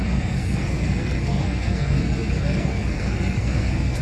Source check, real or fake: fake